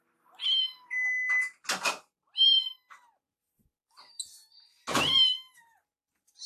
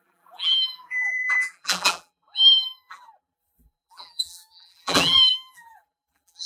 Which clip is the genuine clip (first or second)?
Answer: first